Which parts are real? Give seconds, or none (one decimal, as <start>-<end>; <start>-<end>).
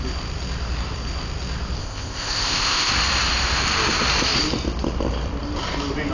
0.0-1.8; 2.9-6.1